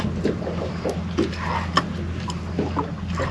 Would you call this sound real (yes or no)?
yes